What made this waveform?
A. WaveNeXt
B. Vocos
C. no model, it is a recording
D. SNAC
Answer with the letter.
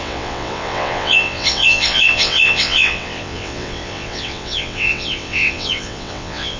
A